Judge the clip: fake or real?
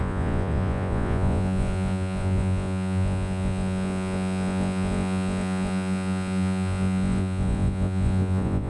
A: fake